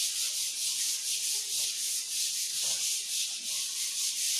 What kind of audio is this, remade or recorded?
recorded